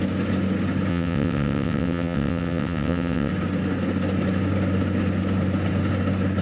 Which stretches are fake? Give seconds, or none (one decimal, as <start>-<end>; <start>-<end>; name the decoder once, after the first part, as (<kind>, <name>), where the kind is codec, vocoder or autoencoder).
0.9-3.3 (vocoder, WaveNeXt)